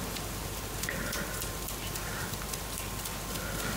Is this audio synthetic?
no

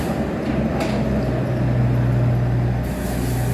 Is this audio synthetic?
no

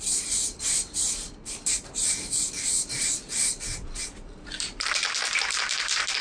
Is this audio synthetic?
yes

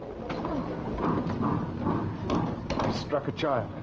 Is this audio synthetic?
no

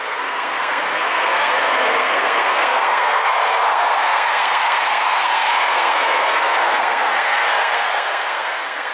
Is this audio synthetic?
yes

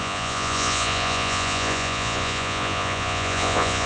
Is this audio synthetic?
yes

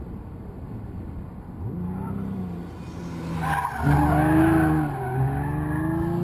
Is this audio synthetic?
no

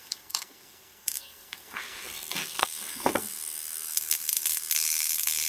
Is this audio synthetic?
yes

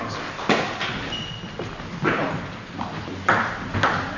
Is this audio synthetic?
no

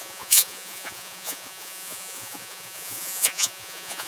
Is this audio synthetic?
yes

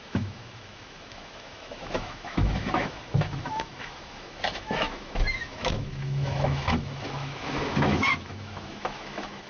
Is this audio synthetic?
yes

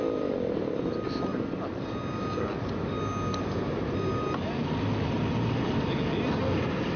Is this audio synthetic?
no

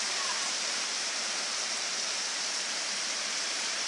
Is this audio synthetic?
yes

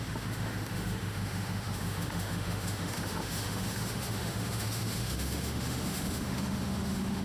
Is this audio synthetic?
yes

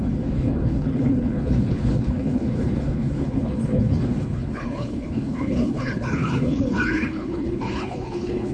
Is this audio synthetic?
yes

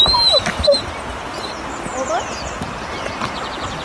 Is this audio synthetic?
no